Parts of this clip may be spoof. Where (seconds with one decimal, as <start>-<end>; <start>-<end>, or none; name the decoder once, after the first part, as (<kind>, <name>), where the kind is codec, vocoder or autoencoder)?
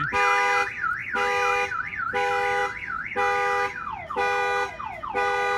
none